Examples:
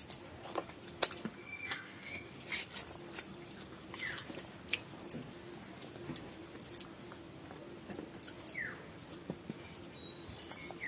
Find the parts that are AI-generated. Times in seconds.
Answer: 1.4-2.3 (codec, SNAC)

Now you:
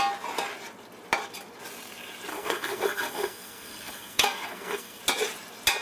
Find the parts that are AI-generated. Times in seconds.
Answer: 2.3-5.0 (codec, SNAC)

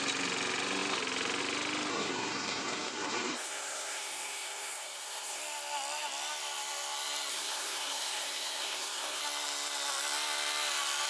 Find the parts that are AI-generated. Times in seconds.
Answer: 1.9-5.4 (codec, SNAC); 7.3-9.2

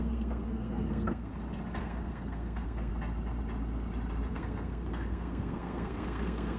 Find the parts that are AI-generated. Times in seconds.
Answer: 0.0-1.3 (codec, SNAC); 1.8-2.9; 4.3-6.6

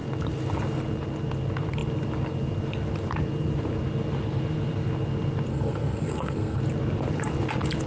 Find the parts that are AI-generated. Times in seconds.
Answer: 5.5-6.6 (codec, SNAC)

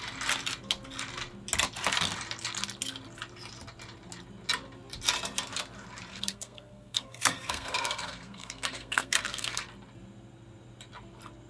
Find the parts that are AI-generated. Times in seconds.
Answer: 6.1-9.6 (codec, SNAC)

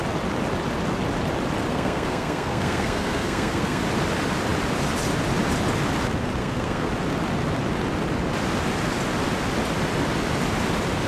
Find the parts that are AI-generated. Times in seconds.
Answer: 1.7-3.8 (codec, SNAC); 6.4-6.9

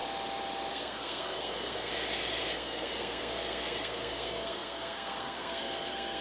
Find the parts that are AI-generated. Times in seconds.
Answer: 0.7-1.9 (codec, SNAC); 2.4-6.2